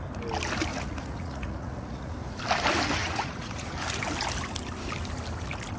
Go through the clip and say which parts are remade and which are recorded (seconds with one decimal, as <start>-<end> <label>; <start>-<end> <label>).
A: 0.0-0.7 recorded; 0.7-2.1 remade; 2.1-3.0 recorded; 3.0-3.7 remade; 3.7-5.8 recorded